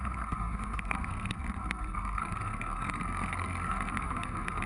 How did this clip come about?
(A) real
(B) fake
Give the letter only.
B